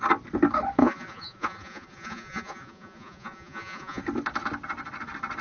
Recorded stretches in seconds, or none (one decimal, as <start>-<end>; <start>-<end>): 0.0-0.8; 4.0-5.4